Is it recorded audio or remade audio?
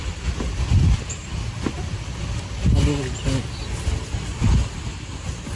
recorded